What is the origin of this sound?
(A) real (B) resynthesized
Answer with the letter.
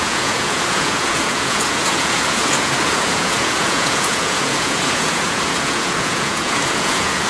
B